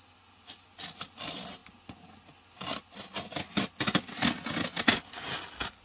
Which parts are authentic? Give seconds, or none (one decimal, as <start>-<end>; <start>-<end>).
0.0-5.8